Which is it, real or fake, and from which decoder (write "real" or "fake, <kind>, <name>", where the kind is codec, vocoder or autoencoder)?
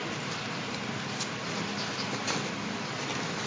real